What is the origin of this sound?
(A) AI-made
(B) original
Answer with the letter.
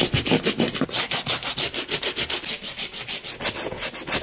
B